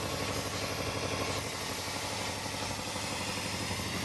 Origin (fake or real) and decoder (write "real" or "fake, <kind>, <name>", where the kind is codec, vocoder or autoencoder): real